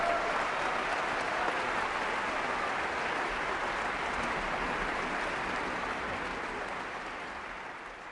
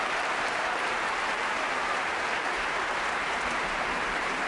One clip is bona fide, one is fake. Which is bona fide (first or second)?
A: first